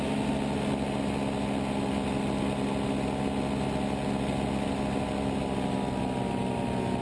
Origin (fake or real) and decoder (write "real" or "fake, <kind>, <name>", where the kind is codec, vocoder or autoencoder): real